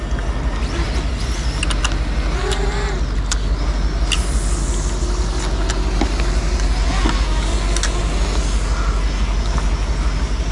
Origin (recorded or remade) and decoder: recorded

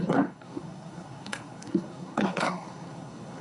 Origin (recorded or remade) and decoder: remade, codec, SNAC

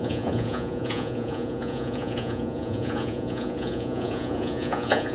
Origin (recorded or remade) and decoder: remade, vocoder, Vocos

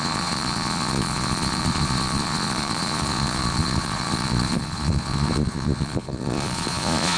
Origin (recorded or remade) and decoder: remade, vocoder, Vocos